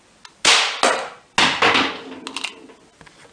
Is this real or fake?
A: real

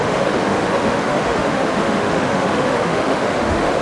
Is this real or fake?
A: fake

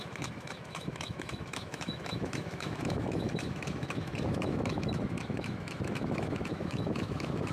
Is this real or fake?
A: fake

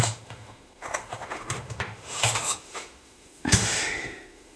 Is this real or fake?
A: fake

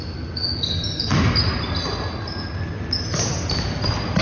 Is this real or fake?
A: real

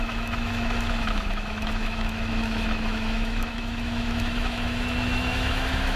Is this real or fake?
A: fake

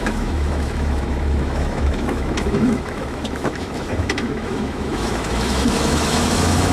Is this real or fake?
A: fake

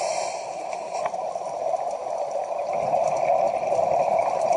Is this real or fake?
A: real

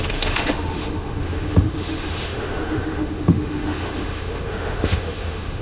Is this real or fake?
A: fake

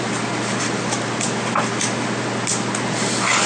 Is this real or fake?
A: real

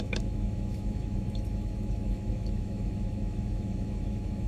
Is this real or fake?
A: fake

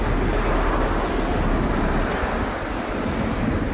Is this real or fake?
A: real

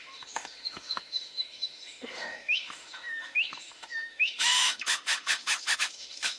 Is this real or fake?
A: fake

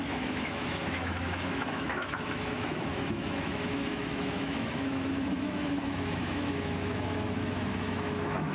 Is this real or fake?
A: fake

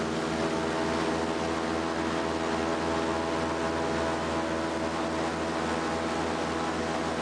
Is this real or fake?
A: real